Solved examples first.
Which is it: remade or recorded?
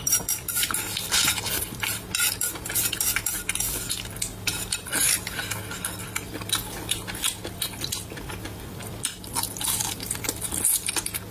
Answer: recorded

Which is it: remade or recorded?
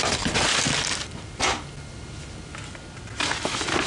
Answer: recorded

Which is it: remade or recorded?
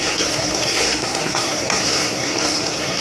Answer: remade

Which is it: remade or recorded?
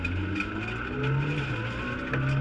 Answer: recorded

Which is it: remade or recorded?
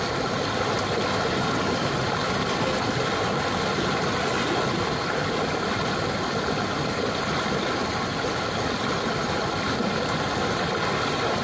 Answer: recorded